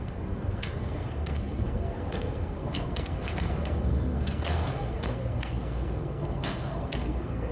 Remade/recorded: remade